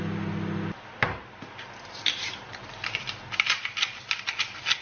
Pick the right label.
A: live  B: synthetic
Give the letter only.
A